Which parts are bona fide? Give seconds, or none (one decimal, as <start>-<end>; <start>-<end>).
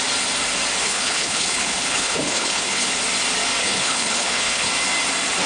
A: 0.0-0.8; 2.9-3.6; 4.7-5.5